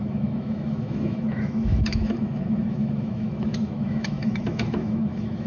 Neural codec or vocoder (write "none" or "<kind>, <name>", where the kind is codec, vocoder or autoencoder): autoencoder, DAC-VAE